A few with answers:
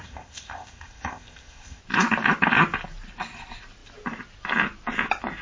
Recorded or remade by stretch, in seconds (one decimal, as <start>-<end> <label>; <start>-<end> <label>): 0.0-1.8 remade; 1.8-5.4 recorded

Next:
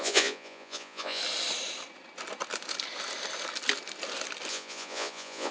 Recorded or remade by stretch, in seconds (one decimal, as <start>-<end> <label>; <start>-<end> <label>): 0.0-1.2 remade; 1.2-4.5 recorded; 4.5-5.5 remade

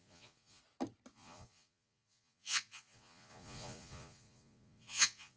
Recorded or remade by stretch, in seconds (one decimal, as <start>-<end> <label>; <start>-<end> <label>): 0.0-0.6 remade; 0.6-1.1 recorded; 1.1-5.4 remade

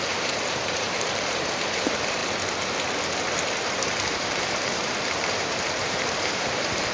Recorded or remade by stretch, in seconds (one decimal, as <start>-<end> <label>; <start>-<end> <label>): 0.0-2.2 remade; 2.2-3.7 recorded; 3.7-6.9 remade